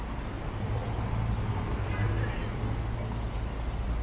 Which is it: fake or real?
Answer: real